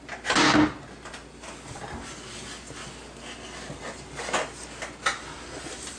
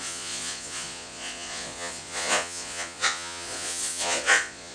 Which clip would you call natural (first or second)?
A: first